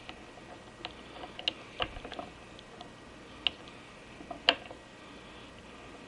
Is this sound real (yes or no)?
yes